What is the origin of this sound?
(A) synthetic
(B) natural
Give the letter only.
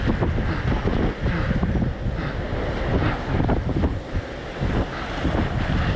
B